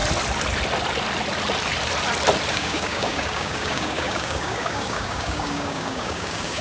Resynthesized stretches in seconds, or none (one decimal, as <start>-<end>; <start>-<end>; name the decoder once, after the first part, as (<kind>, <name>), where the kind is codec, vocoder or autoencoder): 2.5-6.6 (codec, DAC)